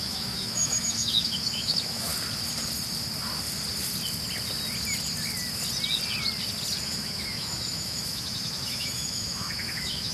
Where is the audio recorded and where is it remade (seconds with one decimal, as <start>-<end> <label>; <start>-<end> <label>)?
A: 0.0-2.1 remade; 2.1-6.8 recorded; 6.8-10.1 remade